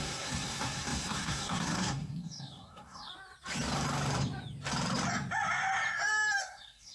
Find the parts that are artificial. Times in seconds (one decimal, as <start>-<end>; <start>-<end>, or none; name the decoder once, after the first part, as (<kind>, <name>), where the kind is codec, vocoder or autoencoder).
0.0-3.1 (codec, SNAC); 6.4-6.9